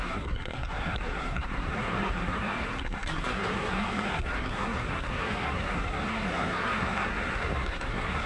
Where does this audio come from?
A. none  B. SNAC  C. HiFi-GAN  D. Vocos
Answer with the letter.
B